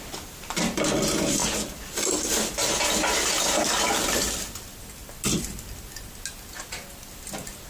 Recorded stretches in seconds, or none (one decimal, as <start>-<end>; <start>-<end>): 0.0-1.4; 2.7-5.0; 5.8-7.7